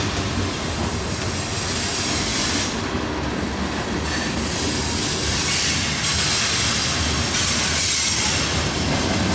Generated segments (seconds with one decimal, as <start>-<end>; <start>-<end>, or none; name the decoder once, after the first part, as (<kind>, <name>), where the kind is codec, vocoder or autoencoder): 2.3-2.9 (vocoder, BigVGAN v2)